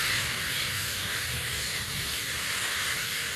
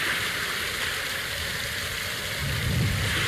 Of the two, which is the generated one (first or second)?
first